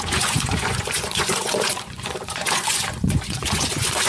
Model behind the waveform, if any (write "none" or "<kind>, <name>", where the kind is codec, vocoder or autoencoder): vocoder, Vocos